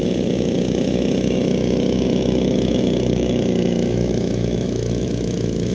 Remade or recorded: remade